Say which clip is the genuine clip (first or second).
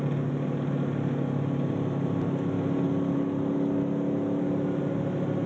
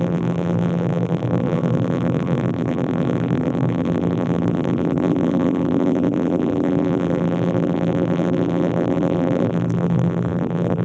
first